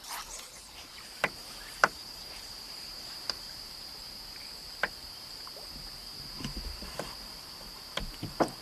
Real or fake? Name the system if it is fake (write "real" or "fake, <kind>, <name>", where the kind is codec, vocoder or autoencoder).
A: fake, vocoder, BigVGAN v2